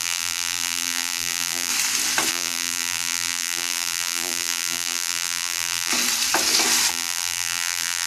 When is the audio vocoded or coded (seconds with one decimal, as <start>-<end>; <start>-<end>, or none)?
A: 0.0-1.7; 2.3-5.9; 6.9-8.1

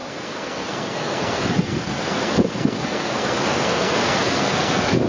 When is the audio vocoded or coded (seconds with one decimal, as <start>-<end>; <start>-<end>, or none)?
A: 0.0-5.1

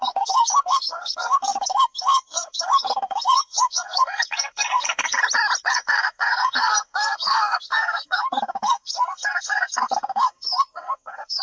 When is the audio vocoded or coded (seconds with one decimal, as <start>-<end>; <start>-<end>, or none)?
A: 0.0-5.2; 5.7-11.4

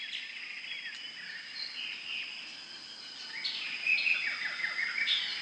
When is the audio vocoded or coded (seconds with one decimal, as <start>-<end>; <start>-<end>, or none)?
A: none

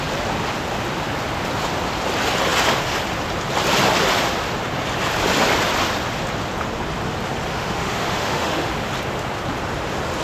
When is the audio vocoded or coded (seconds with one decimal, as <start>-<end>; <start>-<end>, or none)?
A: 7.5-8.7

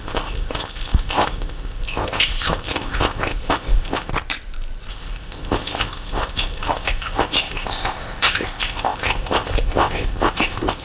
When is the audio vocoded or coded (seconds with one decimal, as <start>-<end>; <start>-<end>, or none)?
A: 0.0-4.1; 4.9-10.8

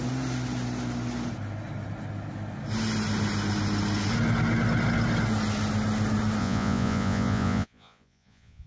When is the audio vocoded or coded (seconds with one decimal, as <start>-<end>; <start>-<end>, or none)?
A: 6.4-8.7